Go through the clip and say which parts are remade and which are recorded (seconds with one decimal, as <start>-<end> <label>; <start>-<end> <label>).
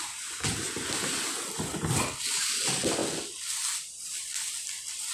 0.0-5.1 recorded